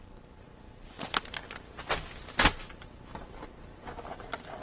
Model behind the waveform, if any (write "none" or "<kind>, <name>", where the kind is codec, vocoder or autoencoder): none